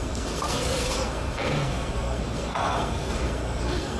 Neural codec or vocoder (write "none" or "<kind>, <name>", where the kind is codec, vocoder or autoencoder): codec, SNAC